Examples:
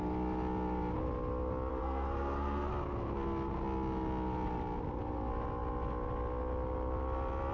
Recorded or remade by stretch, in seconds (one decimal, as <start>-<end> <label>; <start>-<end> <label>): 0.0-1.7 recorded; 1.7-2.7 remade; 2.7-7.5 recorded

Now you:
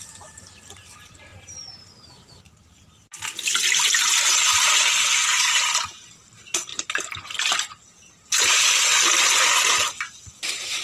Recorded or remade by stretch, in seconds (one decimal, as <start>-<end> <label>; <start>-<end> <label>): 0.0-1.3 remade; 1.3-3.8 recorded; 3.8-6.7 remade; 6.7-10.0 recorded; 10.0-10.8 remade

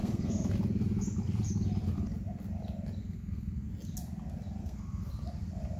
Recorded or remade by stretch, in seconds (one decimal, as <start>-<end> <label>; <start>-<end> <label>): 0.0-0.5 remade; 0.5-3.0 recorded; 3.0-3.7 remade; 3.7-4.6 recorded; 4.6-5.1 remade; 5.1-5.8 recorded

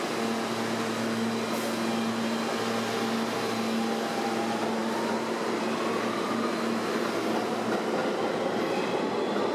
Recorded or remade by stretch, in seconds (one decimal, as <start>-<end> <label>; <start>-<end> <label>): 0.0-9.5 recorded

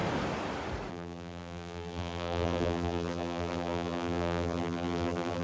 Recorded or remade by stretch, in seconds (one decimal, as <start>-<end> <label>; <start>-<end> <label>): 0.0-0.9 recorded; 0.9-5.4 remade

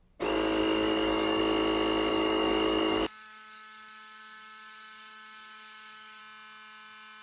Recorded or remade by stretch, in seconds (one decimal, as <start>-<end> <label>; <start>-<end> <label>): 0.0-0.6 recorded; 0.6-1.4 remade; 1.4-2.1 recorded; 2.1-6.2 remade; 6.2-7.2 recorded

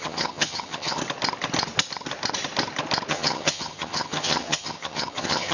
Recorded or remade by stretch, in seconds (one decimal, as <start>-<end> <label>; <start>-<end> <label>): 0.0-1.0 remade; 1.0-3.1 recorded; 3.1-5.5 remade

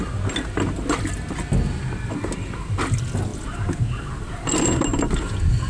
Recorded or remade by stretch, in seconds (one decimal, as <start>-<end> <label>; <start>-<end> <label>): 0.0-5.7 recorded